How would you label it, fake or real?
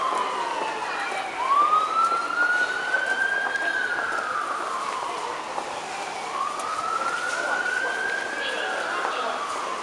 real